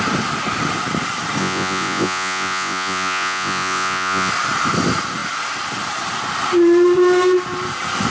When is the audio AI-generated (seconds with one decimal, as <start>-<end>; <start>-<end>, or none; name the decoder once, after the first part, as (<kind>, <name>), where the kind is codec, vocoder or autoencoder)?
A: 1.4-4.3 (vocoder, Vocos)